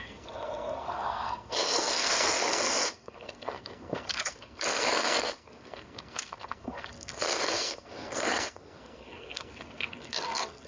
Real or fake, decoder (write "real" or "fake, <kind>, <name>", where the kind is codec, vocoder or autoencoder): fake, codec, SNAC